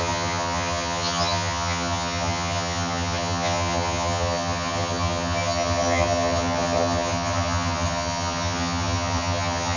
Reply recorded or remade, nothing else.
remade